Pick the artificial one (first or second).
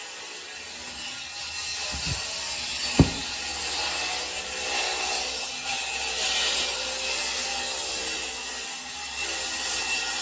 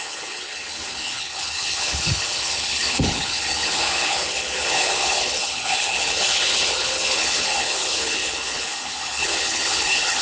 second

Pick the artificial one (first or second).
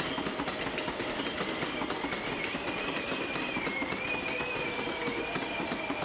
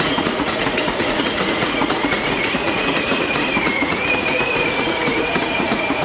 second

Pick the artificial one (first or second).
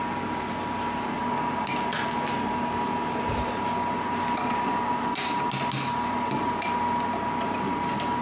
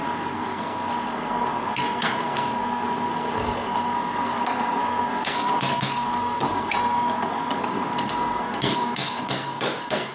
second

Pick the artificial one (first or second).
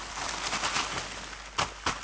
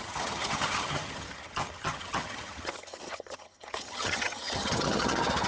second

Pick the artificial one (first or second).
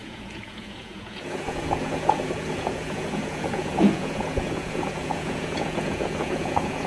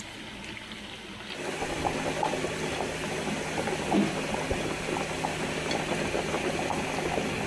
first